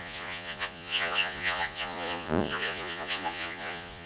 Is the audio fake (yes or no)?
yes